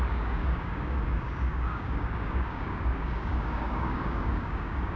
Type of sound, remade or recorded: remade